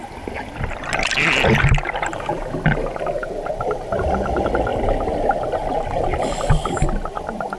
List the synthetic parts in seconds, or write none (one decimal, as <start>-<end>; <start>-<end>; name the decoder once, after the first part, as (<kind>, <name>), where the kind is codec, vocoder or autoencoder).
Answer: none